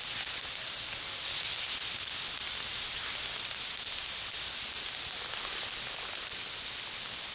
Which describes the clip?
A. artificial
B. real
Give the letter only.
B